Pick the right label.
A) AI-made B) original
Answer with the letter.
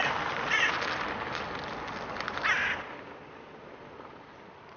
B